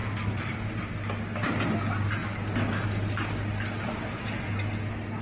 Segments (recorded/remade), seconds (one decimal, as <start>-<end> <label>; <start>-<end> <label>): 0.0-0.9 remade; 0.9-5.2 recorded